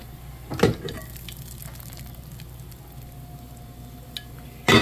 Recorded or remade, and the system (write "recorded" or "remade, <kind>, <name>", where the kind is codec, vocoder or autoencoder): recorded